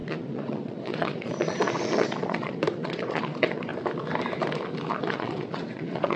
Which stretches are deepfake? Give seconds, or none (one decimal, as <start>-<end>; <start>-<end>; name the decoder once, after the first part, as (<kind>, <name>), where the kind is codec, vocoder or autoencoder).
0.0-3.7 (vocoder, Vocos); 4.9-6.2